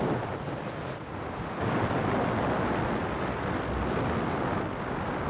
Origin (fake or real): real